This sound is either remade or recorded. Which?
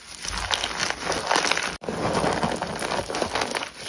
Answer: recorded